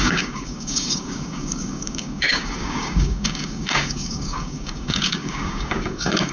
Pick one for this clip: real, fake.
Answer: fake